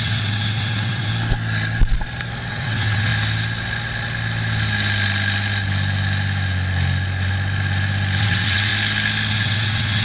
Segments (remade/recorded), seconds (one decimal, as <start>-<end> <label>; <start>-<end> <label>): 0.0-1.1 remade; 1.1-2.5 recorded; 2.5-3.1 remade; 3.1-8.2 recorded; 8.2-8.7 remade; 8.7-9.3 recorded; 9.3-10.0 remade

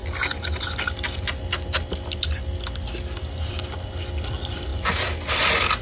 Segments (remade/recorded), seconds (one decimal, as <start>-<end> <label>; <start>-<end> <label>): 0.0-5.8 recorded

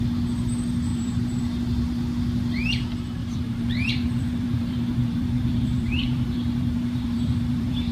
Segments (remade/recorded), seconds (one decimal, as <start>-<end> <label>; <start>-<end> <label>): 0.0-0.9 recorded; 0.9-1.4 remade; 1.4-3.2 recorded; 3.2-7.9 remade

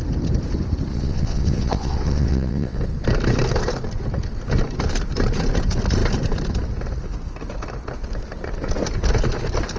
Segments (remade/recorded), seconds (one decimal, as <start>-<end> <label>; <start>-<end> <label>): 0.0-0.9 recorded; 0.9-2.8 remade; 2.8-9.8 recorded

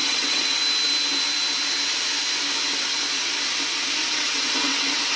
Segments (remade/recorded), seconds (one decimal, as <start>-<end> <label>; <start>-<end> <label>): 0.0-0.6 remade; 0.6-4.0 recorded; 4.0-5.2 remade

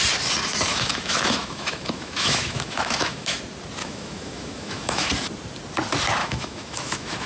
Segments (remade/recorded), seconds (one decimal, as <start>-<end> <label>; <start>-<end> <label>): 0.0-0.7 recorded; 0.7-3.4 remade; 3.4-3.8 recorded; 3.8-5.1 remade; 5.1-6.2 recorded; 6.2-7.3 remade

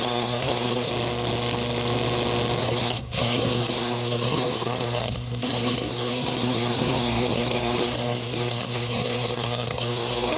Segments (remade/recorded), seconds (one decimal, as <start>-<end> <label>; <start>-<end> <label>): 0.0-0.9 remade; 0.9-2.6 recorded; 2.6-10.4 remade

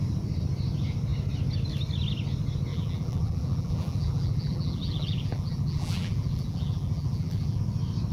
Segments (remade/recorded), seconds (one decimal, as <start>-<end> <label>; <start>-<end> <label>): 0.0-2.7 recorded; 2.7-7.6 remade; 7.6-8.1 recorded